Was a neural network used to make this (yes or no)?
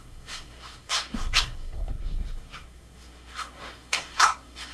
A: yes